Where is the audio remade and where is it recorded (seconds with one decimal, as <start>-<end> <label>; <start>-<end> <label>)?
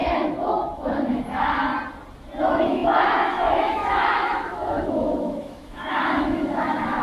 0.0-1.7 remade; 1.7-2.4 recorded; 2.4-7.0 remade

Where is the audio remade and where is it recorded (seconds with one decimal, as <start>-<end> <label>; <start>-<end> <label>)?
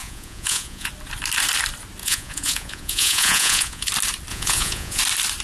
0.0-0.9 remade; 0.9-2.0 recorded; 2.0-3.9 remade; 3.9-4.3 recorded; 4.3-5.0 remade; 5.0-5.4 recorded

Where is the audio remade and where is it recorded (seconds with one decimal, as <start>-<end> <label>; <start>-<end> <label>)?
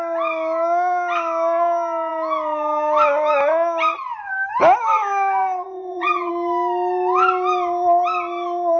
0.0-5.4 recorded; 5.4-6.3 remade; 6.3-8.8 recorded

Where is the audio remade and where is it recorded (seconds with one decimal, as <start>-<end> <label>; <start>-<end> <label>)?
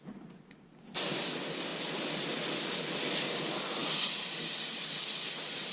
0.0-5.7 recorded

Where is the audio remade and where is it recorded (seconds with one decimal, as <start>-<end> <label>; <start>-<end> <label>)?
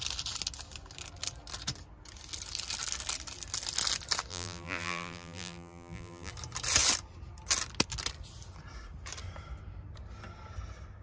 0.0-4.3 recorded; 4.3-6.3 remade; 6.3-11.0 recorded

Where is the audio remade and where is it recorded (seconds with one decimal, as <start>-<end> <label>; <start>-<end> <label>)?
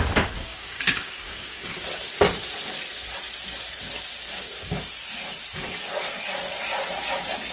0.0-0.5 recorded; 0.5-1.7 remade; 1.7-4.2 recorded; 4.2-4.9 remade; 4.9-7.5 recorded